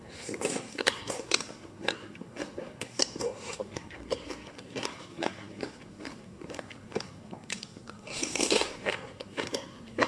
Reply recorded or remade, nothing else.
remade